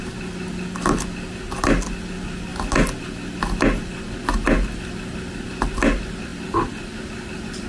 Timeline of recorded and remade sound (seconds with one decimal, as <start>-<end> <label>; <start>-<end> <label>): 0.0-7.7 recorded